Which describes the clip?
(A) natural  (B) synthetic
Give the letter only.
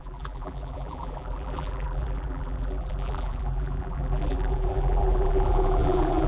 B